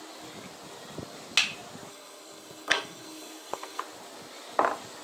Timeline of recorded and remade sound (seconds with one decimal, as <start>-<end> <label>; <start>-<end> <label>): 0.0-1.9 recorded; 1.9-3.8 remade; 3.8-5.0 recorded